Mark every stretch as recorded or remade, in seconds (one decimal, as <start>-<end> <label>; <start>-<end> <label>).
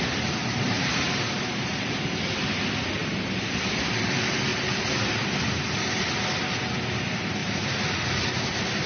0.0-0.4 recorded; 0.4-2.0 remade; 2.0-3.0 recorded; 3.0-3.8 remade; 3.8-4.5 recorded; 4.5-5.6 remade; 5.6-7.4 recorded; 7.4-8.1 remade; 8.1-8.9 recorded